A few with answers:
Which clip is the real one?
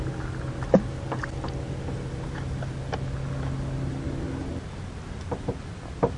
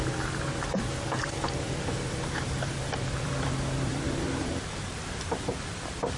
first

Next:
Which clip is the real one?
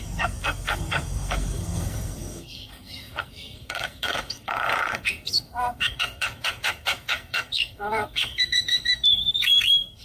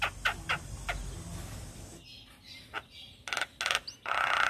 second